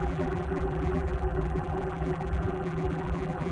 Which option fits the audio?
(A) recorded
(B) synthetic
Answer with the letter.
B